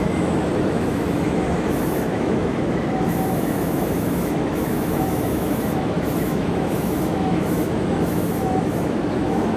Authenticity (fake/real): fake